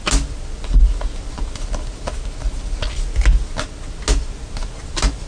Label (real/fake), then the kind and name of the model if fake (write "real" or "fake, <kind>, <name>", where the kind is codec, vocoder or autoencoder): real